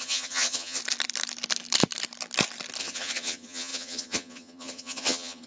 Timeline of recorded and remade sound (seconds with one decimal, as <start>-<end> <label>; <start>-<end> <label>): 0.0-0.8 remade; 0.8-2.8 recorded; 2.8-5.5 remade